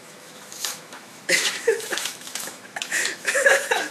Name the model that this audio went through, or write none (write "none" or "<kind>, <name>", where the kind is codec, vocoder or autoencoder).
autoencoder, DAC-VAE